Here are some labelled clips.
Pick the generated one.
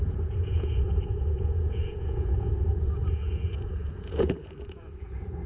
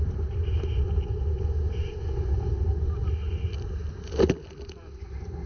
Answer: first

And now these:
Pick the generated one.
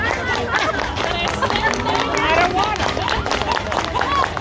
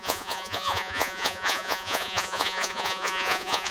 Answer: second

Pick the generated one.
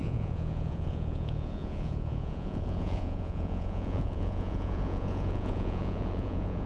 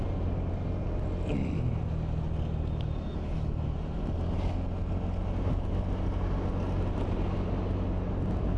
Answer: first